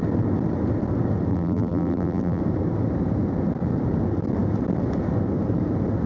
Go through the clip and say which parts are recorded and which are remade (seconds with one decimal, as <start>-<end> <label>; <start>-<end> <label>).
0.0-1.3 recorded; 1.3-2.4 remade; 2.4-6.1 recorded